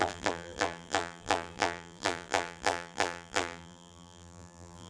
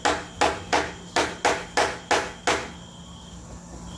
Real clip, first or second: second